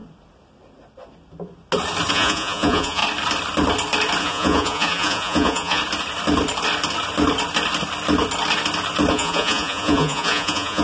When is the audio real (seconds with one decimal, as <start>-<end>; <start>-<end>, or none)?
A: 0.0-2.1; 3.0-4.2; 5.8-9.1